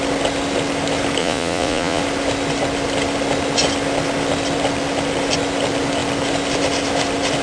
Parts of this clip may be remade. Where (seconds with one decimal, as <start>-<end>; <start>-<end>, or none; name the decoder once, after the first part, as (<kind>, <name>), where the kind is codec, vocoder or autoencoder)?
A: 1.2-2.0 (vocoder, Vocos)